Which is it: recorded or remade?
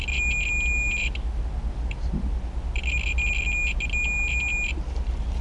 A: recorded